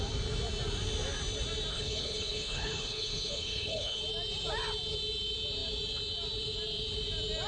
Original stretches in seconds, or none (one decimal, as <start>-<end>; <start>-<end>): 0.0-1.7; 4.0-7.5